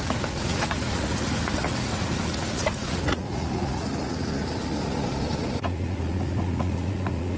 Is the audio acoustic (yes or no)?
no